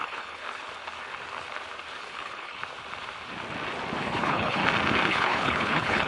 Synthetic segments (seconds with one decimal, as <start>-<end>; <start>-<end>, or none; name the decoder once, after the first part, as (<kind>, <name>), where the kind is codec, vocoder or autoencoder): 0.0-0.4 (codec, HILCodec); 2.0-2.6; 4.0-4.6; 5.1-6.1